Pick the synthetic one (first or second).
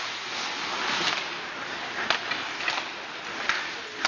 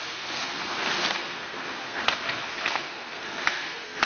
second